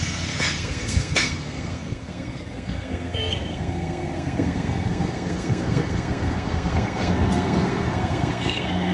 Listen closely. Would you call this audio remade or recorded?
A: remade